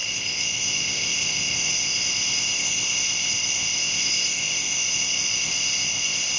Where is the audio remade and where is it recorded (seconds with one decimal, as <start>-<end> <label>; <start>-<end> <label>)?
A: 0.0-6.4 remade